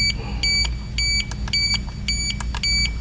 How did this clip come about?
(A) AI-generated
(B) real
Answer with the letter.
B